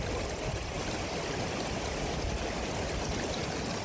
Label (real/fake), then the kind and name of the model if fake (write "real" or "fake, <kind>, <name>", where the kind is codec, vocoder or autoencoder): real